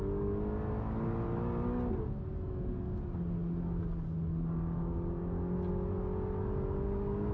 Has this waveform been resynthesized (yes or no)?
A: no